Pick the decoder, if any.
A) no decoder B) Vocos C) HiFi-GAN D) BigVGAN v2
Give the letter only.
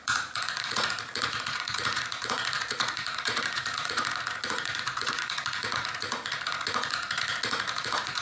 B